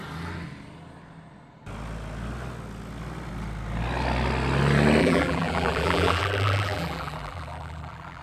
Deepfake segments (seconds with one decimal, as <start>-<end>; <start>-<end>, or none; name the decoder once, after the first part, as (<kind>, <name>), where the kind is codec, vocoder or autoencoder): 5.0-8.2 (vocoder, BigVGAN v2)